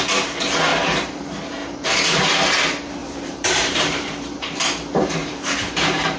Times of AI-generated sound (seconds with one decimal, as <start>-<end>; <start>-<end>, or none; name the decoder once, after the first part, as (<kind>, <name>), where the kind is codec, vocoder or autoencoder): 0.7-1.2 (vocoder, BigVGAN v2); 1.6-2.2; 3.0-4.6; 5.2-6.2